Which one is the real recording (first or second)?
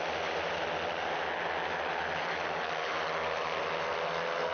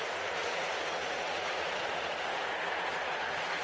first